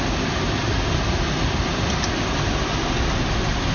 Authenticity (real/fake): real